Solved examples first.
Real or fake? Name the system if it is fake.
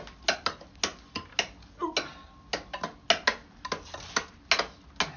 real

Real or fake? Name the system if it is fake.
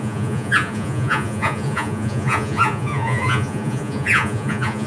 fake, vocoder, Vocos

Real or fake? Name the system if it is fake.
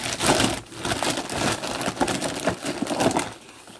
real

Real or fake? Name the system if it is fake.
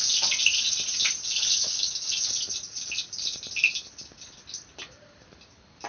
real